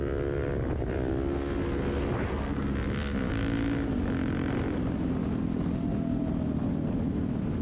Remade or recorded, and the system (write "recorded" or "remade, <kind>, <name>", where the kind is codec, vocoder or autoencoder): recorded